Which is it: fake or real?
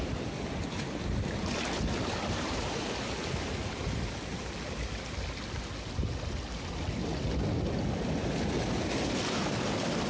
real